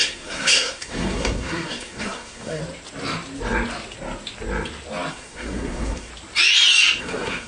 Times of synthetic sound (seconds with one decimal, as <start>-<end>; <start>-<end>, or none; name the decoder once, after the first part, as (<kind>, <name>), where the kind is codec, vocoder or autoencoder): 0.0-2.6 (codec, SNAC); 5.1-6.1; 7.0-7.5